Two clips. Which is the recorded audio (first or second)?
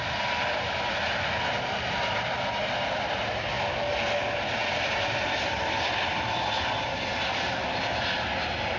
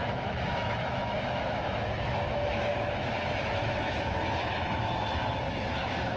first